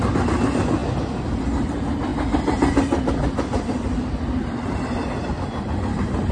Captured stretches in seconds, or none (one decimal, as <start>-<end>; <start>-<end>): 0.0-6.3